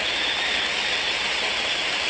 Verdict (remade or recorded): recorded